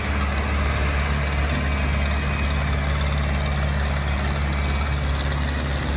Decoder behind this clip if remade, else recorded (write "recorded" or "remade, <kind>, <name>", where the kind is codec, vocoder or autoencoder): recorded